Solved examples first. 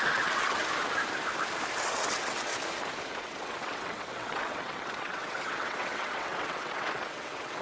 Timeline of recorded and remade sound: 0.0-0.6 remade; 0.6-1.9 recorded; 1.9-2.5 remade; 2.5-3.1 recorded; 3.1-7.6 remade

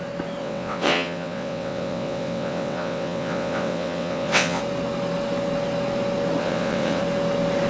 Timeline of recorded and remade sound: 0.0-0.4 recorded; 0.4-4.6 remade; 4.6-6.4 recorded; 6.4-7.0 remade; 7.0-7.7 recorded

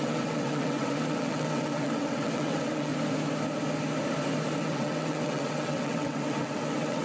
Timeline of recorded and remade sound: 0.0-2.9 remade; 2.9-4.6 recorded; 4.6-7.0 remade

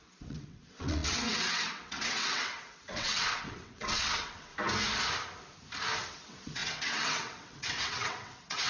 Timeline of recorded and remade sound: 0.0-4.5 remade; 4.5-6.1 recorded; 6.1-8.7 remade

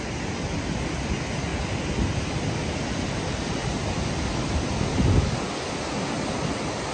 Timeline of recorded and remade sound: 0.0-6.9 recorded